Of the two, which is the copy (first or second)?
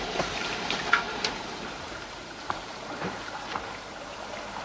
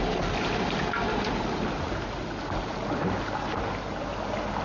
first